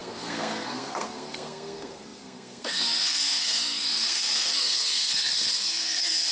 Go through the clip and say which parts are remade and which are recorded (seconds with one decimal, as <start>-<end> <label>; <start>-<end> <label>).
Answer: 0.0-6.3 remade